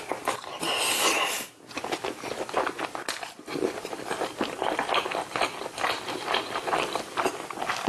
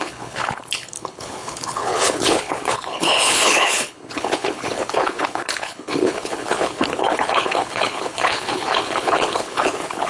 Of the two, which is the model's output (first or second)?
second